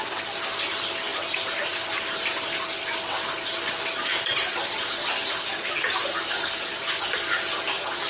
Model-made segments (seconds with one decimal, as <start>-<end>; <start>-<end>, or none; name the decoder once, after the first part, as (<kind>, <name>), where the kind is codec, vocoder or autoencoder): none